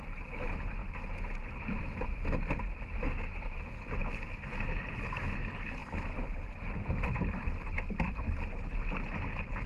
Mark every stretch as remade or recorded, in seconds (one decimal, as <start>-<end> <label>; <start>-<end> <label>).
0.0-9.7 recorded